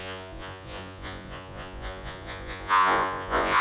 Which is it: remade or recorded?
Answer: remade